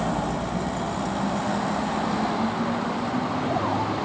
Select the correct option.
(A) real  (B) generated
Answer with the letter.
A